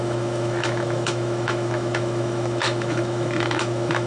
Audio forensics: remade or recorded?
remade